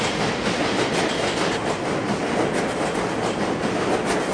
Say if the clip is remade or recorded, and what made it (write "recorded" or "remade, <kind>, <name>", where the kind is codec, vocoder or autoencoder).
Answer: recorded